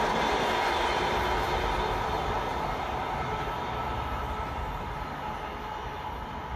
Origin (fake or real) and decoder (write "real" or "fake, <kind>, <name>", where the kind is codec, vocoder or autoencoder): real